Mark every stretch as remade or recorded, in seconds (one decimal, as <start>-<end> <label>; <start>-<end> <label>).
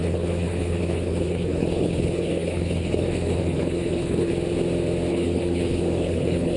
0.0-4.3 remade; 4.3-5.1 recorded; 5.1-6.6 remade